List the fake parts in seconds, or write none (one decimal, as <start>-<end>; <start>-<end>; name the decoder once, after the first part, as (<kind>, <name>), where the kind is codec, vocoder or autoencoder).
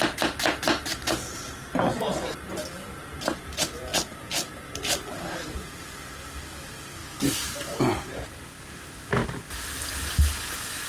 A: 7.0-7.8 (codec, DAC)